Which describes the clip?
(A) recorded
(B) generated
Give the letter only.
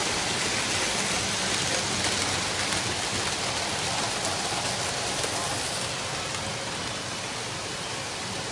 A